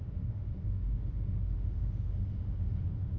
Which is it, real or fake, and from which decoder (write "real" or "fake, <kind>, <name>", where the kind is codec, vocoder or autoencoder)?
fake, autoencoder, DAC-VAE